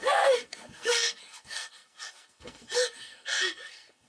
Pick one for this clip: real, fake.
fake